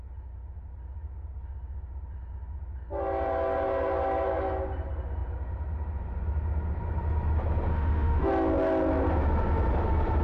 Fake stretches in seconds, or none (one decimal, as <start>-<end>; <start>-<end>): 7.7-8.3